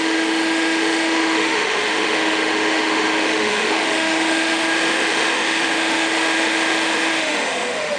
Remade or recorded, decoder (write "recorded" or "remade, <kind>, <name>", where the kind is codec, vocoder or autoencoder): remade, autoencoder, DAC-VAE